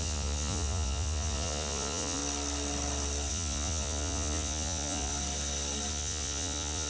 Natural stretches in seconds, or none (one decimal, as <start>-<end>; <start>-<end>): 2.2-3.3; 5.1-5.9